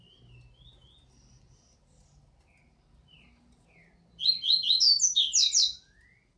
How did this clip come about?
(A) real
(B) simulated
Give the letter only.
A